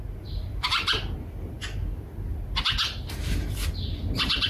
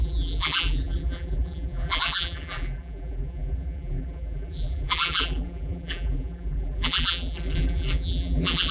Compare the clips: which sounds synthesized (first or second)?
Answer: second